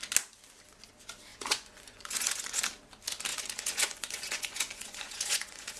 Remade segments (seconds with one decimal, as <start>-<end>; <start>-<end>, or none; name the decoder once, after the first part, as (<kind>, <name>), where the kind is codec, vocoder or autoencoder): 1.3-2.6 (vocoder, Vocos); 3.3-5.8